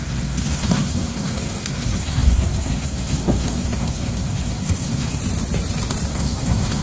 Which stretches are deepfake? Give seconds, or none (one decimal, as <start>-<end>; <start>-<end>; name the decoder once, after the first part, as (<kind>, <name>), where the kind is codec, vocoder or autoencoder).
0.0-5.2 (codec, SNAC); 6.1-6.8